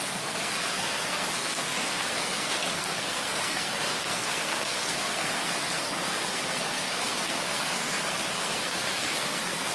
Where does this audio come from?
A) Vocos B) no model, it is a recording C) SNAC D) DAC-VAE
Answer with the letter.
C